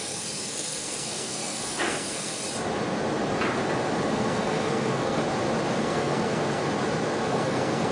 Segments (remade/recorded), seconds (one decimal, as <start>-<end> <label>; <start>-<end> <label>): 0.0-2.4 remade; 2.4-4.1 recorded; 4.1-5.2 remade; 5.2-5.7 recorded; 5.7-6.6 remade; 6.6-7.3 recorded; 7.3-7.9 remade